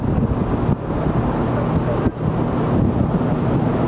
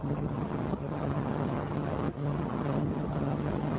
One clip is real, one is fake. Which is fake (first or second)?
second